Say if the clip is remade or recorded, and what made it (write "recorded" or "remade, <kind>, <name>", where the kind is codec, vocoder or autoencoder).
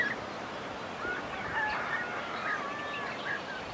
recorded